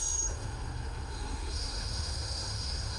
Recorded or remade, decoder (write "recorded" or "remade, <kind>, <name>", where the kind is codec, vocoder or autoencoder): remade, codec, SNAC